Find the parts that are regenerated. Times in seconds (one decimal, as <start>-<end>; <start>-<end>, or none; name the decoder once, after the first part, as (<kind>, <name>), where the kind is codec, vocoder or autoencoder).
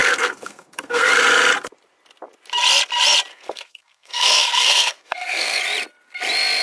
0.0-1.1 (codec, SNAC); 3.3-5.6